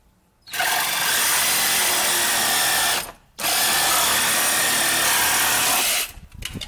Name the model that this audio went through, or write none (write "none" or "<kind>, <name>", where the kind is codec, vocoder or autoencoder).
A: none